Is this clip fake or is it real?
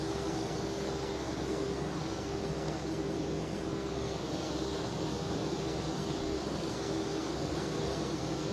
fake